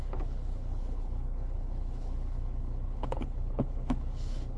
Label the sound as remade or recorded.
remade